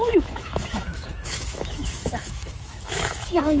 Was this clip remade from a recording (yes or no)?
yes